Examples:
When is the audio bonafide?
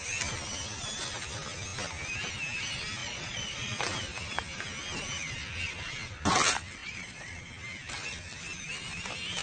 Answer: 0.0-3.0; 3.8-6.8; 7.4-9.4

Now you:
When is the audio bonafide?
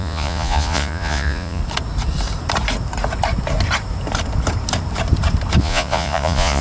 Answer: 1.6-5.6